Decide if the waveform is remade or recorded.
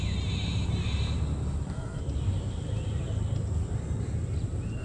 recorded